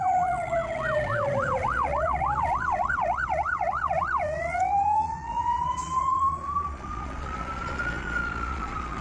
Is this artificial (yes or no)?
yes